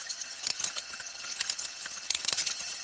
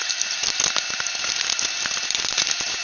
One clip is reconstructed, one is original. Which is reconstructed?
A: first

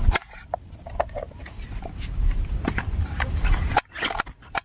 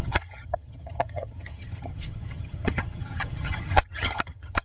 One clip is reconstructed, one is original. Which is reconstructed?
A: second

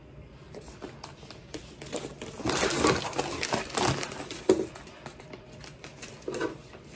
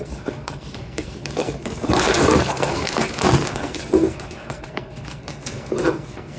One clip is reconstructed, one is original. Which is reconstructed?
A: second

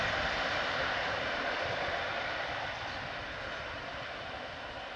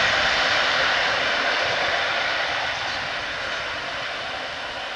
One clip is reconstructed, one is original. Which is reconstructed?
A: first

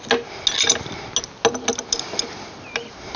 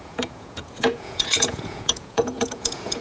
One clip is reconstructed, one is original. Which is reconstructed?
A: second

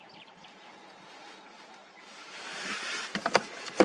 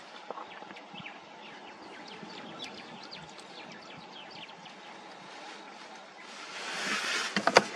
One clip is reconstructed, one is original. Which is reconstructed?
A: first